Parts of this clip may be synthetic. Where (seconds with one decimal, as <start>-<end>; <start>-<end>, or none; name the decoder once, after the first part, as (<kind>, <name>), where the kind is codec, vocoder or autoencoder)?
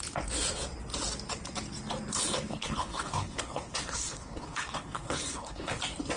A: 2.1-5.8 (codec, HILCodec)